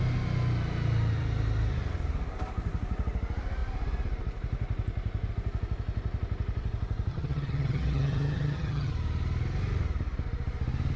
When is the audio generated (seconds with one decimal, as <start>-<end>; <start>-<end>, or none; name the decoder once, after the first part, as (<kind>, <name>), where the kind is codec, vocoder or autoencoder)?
7.1-8.9 (vocoder, HiFi-GAN)

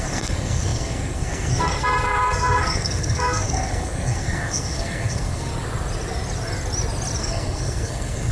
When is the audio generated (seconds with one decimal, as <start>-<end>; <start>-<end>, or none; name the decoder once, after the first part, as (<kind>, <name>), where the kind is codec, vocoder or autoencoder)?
0.0-5.5 (codec, SNAC); 7.2-8.3

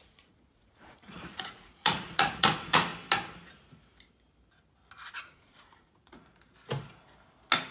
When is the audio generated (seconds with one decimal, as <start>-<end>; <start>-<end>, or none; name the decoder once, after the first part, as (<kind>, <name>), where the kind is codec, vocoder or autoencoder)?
0.0-2.9 (vocoder, Vocos); 5.1-6.3

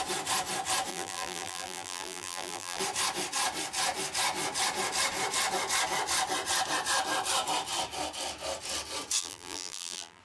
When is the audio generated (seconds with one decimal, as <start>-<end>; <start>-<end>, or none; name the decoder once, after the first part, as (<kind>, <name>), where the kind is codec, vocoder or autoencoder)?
0.9-2.8 (vocoder, BigVGAN v2); 9.2-10.2

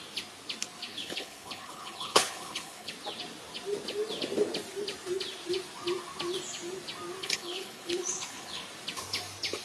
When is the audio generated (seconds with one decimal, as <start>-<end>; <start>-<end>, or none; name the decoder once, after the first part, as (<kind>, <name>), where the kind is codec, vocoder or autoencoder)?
0.9-2.9 (codec, HILCodec); 7.2-8.6

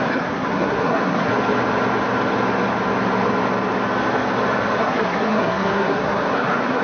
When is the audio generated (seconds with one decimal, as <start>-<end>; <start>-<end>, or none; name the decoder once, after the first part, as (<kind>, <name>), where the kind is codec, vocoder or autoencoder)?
0.0-1.3 (codec, SNAC); 4.8-6.8

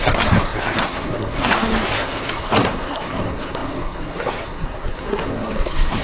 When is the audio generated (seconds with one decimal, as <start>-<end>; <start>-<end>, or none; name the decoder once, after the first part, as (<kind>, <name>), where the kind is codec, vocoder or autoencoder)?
0.0-6.0 (codec, SNAC)